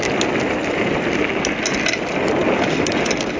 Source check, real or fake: real